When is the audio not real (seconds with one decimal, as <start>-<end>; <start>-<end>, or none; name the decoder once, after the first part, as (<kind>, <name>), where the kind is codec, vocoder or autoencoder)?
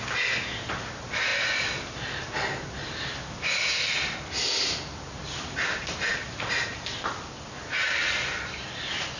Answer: none